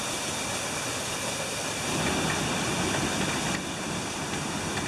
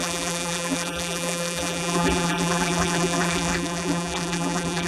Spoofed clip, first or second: second